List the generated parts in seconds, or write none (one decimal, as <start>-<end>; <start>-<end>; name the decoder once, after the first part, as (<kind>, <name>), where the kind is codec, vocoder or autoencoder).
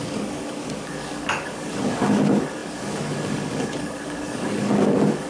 0.0-5.3 (codec, DAC)